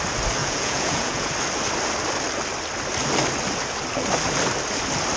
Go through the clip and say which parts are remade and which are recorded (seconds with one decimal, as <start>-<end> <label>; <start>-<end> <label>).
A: 0.0-0.4 recorded; 0.4-1.3 remade; 1.3-5.2 recorded